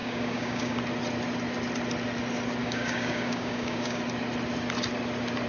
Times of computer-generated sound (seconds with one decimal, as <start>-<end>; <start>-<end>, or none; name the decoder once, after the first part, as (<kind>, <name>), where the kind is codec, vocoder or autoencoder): 0.0-0.8 (codec, DAC); 2.6-4.0